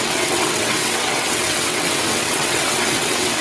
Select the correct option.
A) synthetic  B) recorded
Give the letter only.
A